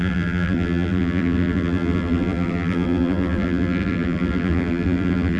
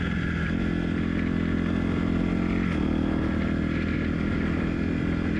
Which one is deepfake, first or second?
first